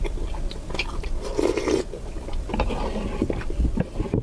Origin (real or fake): real